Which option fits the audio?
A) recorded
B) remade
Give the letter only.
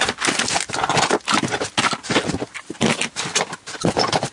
A